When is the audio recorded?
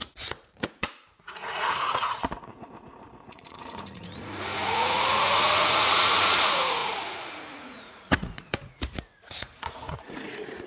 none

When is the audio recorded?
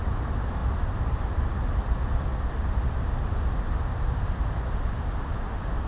0.0-5.9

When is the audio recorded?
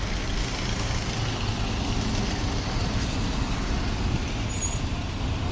0.0-5.5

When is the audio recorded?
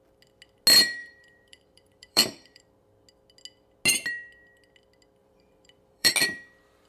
0.0-1.0; 2.9-5.2; 6.1-6.9